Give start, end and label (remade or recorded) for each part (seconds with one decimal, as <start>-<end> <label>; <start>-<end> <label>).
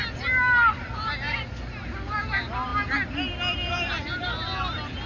0.0-5.1 recorded